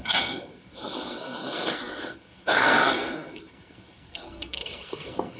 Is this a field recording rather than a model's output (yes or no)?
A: no